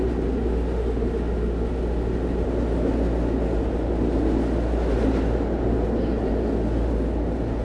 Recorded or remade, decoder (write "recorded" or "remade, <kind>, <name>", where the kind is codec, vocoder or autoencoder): recorded